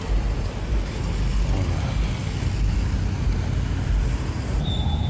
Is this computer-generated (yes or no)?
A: no